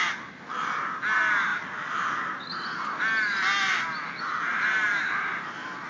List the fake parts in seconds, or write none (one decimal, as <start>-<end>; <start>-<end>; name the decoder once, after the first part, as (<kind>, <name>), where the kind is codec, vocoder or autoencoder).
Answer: none